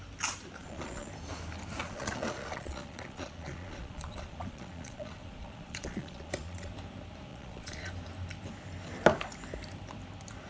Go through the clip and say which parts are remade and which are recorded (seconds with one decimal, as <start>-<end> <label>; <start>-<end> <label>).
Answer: 0.0-0.6 recorded; 0.6-1.1 remade; 1.1-1.8 recorded; 1.8-6.7 remade; 6.7-7.3 recorded; 7.3-7.9 remade; 7.9-10.5 recorded